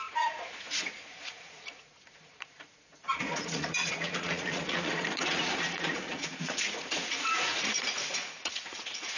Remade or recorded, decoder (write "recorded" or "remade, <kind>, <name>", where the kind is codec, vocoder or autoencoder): remade, vocoder, Vocos